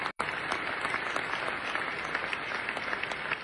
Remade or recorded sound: remade